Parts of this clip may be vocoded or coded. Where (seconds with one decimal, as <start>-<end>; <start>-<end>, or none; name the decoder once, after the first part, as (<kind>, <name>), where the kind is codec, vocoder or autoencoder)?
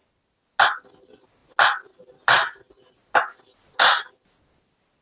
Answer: none